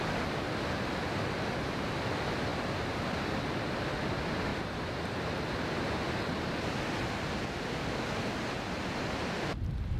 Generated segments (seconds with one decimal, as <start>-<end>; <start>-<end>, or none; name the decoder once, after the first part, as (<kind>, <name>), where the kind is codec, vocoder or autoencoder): 2.5-3.5 (vocoder, BigVGAN v2); 4.5-5.2